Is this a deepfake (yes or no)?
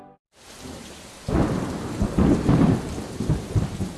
yes